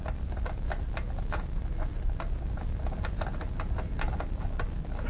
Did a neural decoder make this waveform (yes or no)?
no